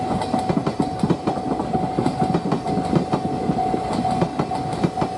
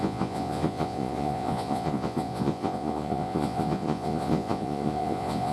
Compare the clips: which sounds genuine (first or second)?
first